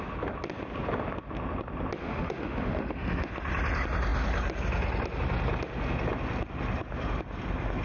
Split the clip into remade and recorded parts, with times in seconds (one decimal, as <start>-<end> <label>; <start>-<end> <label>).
0.0-2.0 recorded; 2.0-3.3 remade; 3.3-7.8 recorded